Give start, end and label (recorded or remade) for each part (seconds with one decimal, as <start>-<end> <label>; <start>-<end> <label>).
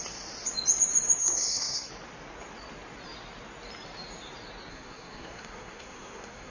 0.0-1.2 recorded; 1.2-1.9 remade; 1.9-4.7 recorded; 4.7-6.5 remade